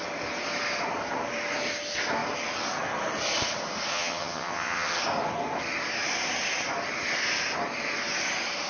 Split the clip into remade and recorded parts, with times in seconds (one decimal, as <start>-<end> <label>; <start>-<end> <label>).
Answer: 0.0-3.9 recorded; 3.9-5.0 remade; 5.0-8.7 recorded